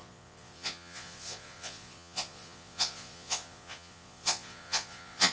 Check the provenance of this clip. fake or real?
fake